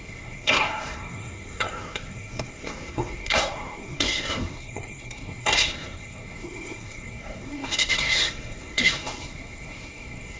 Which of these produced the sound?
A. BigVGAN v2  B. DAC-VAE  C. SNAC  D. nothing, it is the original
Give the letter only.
C